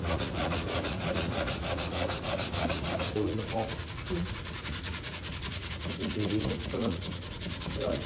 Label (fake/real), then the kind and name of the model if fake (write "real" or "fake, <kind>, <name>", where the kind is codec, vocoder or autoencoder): fake, vocoder, Vocos